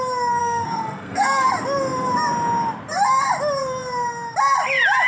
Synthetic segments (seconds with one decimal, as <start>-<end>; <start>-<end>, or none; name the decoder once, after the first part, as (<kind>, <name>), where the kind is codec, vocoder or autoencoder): 0.4-1.5 (codec, SNAC)